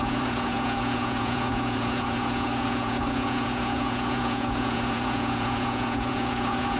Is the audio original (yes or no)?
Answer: no